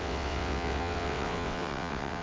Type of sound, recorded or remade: remade